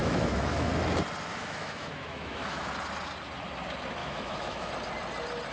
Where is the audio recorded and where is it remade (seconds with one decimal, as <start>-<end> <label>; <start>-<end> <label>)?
0.0-0.7 remade; 0.7-1.3 recorded; 1.3-2.7 remade; 2.7-4.0 recorded; 4.0-4.7 remade; 4.7-5.5 recorded